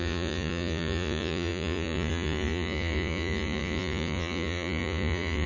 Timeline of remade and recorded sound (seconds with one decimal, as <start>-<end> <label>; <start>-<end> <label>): 0.0-5.5 remade